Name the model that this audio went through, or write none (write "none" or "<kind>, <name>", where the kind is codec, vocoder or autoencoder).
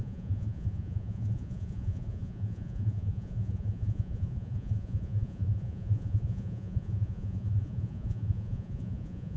vocoder, Vocos